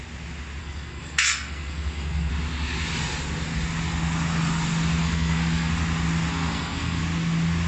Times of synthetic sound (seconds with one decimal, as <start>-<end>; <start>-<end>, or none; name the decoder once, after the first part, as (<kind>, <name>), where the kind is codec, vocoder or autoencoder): 0.6-2.3 (codec, SNAC); 5.0-5.7; 6.3-7.0